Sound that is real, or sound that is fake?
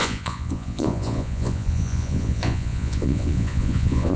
fake